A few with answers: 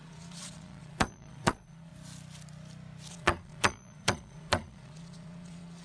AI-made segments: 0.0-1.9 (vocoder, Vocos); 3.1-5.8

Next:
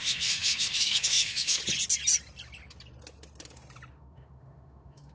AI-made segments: 0.0-1.6 (autoencoder, DAC-VAE); 3.9-5.1

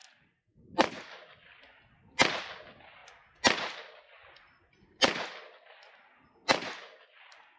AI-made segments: none